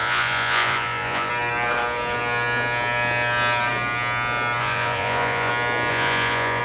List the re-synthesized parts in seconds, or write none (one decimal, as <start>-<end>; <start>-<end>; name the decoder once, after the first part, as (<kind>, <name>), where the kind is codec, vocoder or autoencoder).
0.0-1.3 (vocoder, Vocos); 4.6-5.5; 5.9-6.6